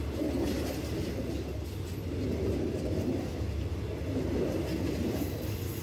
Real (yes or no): yes